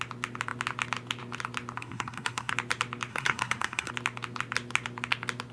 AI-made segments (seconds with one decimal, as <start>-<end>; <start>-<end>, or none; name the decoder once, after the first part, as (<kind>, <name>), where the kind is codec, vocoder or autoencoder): 1.8-2.5 (codec, SNAC); 3.1-3.9